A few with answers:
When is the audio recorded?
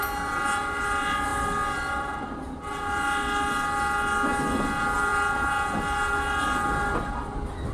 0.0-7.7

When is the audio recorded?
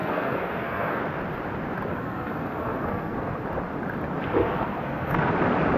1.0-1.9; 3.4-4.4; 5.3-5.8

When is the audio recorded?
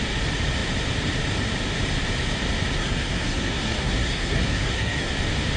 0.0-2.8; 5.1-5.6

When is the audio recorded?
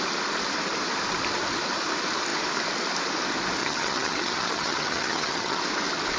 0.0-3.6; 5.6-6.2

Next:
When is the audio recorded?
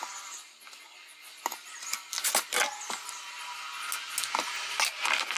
0.0-5.4